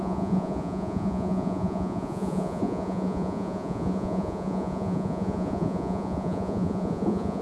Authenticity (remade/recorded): remade